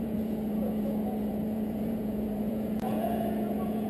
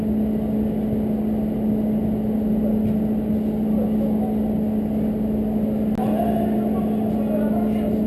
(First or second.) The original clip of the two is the second